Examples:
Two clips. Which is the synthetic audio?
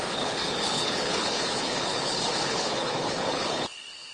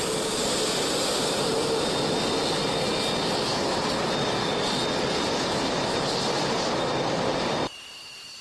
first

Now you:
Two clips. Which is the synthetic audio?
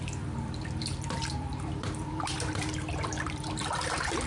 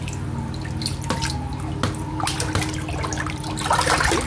first